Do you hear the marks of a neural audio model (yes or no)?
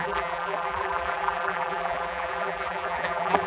yes